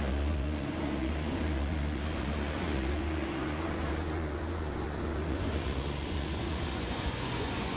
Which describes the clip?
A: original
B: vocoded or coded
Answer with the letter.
B